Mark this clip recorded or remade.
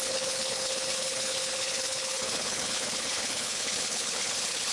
remade